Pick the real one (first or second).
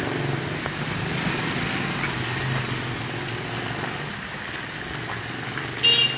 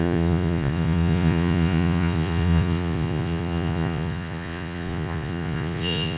first